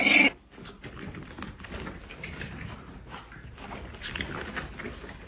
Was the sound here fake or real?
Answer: real